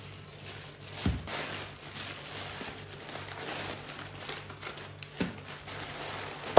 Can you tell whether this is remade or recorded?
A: recorded